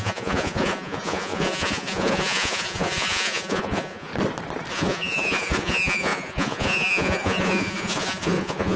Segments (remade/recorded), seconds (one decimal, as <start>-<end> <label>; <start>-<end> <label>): 0.0-4.1 remade; 4.1-4.7 recorded; 4.7-8.8 remade